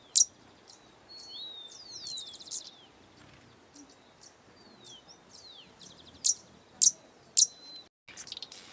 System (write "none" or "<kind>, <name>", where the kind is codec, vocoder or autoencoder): none